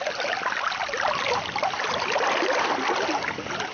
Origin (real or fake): real